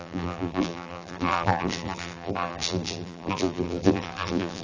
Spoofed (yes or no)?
yes